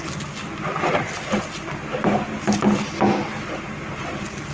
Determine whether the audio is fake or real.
real